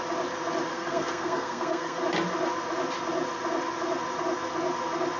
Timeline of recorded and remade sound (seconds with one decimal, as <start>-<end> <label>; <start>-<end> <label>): 0.0-0.7 recorded; 0.7-2.0 remade; 2.0-5.2 recorded